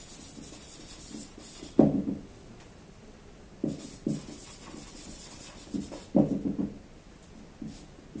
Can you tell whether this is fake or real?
real